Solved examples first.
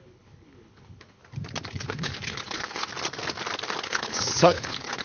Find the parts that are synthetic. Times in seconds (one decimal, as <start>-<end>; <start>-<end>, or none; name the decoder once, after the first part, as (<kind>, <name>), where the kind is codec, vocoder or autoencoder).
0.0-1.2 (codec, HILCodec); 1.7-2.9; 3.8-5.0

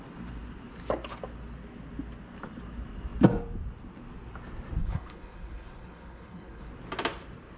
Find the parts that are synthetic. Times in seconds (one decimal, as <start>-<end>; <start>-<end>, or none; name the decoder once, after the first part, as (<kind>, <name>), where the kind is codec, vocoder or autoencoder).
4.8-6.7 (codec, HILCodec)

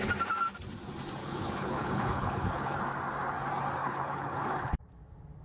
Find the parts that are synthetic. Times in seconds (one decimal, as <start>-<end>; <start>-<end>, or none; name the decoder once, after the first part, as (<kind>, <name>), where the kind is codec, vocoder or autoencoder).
1.2-2.8 (codec, HILCodec); 3.8-4.8

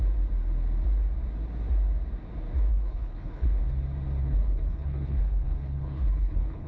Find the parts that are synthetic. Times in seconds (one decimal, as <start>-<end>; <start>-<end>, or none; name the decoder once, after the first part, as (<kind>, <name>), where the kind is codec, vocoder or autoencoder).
2.7-3.6 (codec, HILCodec); 4.2-6.7

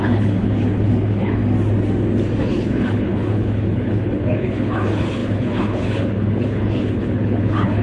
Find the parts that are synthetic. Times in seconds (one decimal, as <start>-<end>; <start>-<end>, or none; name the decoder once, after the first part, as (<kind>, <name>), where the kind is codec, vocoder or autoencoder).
0.0-1.4 (codec, HILCodec); 2.4-7.8